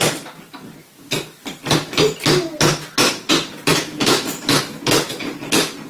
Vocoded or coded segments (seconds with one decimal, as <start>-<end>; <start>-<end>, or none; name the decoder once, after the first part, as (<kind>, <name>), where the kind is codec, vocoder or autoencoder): 3.7-4.6 (autoencoder, DAC-VAE)